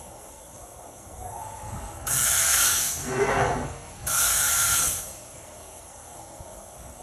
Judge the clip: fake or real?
fake